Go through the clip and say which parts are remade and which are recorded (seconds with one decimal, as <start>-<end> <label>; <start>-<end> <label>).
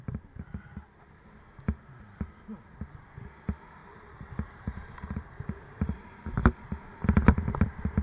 0.0-3.8 recorded; 3.8-6.4 remade; 6.4-8.0 recorded